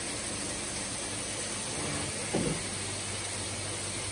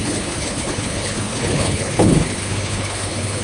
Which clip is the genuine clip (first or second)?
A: first